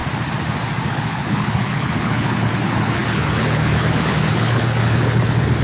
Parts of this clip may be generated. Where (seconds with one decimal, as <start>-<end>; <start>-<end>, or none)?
0.9-5.6